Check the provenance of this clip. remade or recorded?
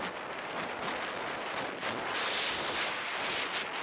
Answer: recorded